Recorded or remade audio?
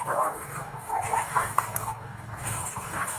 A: remade